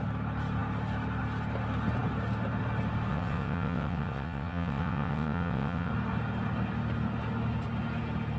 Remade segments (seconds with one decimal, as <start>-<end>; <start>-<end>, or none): 3.1-5.9